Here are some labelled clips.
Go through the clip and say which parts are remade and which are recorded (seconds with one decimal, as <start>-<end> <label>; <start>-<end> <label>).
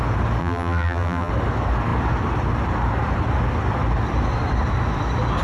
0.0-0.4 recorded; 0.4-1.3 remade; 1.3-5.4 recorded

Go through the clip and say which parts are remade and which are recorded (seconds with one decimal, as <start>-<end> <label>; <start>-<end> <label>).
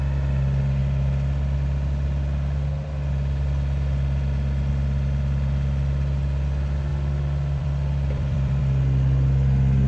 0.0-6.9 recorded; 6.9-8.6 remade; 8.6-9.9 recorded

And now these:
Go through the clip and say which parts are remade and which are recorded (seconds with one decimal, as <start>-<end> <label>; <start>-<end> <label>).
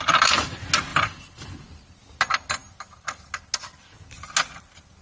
0.0-0.9 recorded; 0.9-1.5 remade; 1.5-5.0 recorded